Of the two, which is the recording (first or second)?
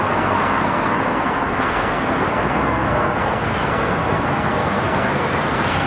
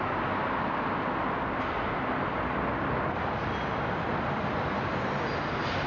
second